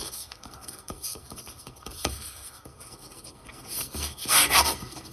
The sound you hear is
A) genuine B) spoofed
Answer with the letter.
B